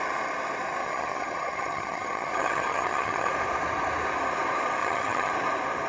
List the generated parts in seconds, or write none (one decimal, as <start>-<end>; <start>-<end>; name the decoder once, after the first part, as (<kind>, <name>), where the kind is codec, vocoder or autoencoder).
0.8-3.3 (vocoder, HiFi-GAN); 4.8-5.3